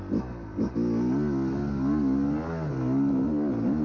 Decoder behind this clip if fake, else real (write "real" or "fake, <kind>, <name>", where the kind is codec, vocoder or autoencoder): real